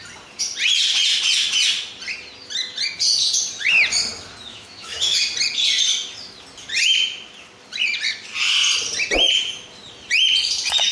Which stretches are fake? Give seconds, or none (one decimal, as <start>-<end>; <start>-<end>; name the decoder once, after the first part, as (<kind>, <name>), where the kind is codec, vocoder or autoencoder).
4.5-5.2 (autoencoder, DAC-VAE)